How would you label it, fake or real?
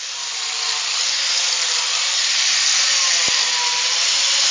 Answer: real